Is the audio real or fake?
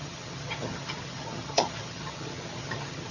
fake